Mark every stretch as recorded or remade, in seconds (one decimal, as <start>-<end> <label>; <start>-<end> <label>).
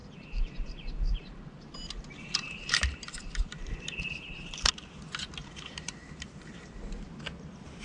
0.0-4.7 remade; 4.7-5.4 recorded; 5.4-6.8 remade; 6.8-7.8 recorded